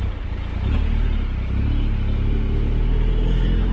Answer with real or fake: real